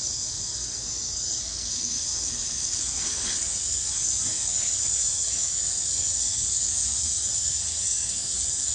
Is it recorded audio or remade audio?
remade